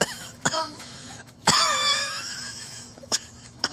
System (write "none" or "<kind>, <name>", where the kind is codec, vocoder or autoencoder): autoencoder, DAC-VAE